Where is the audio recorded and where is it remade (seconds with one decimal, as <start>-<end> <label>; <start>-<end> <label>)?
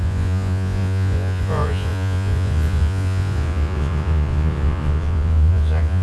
0.0-6.0 remade